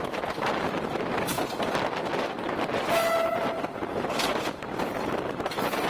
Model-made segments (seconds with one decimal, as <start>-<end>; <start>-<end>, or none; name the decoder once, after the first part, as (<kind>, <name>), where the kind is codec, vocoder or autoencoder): none